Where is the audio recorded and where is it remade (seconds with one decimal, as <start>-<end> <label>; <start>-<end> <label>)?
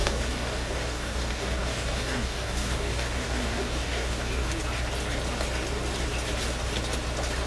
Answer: 0.0-4.5 remade; 4.5-7.5 recorded